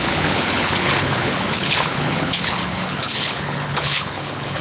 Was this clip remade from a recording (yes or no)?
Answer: yes